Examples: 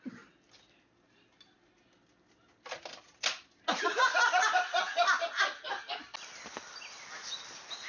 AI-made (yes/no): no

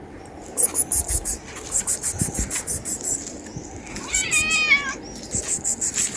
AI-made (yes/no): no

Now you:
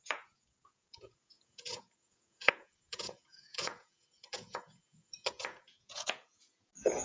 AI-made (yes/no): yes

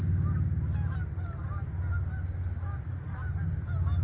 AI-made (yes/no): no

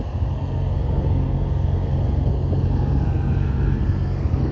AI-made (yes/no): yes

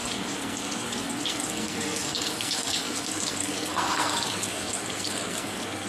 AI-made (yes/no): yes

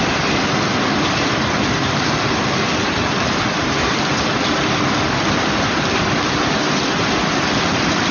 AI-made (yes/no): no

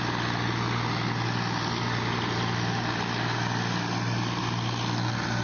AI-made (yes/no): no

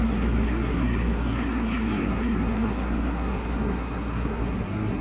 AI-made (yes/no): yes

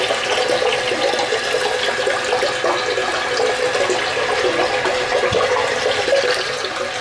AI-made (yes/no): no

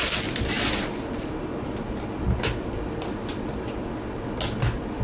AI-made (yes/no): no